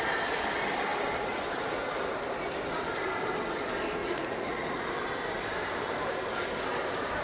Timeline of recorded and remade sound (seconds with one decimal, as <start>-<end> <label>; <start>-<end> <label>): 0.0-4.0 recorded; 4.0-4.9 remade; 4.9-7.2 recorded